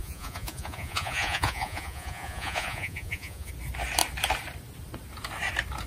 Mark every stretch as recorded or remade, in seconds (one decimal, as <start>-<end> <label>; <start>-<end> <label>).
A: 0.0-3.5 remade; 3.5-5.9 recorded